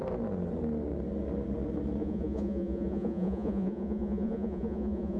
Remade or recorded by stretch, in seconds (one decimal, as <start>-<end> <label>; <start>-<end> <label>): 0.0-2.0 recorded; 2.0-5.2 remade